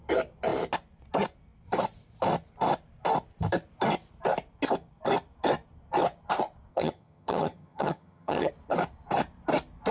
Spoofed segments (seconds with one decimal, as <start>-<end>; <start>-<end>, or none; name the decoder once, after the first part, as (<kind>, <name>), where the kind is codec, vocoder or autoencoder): 6.7-8.5 (vocoder, HiFi-GAN)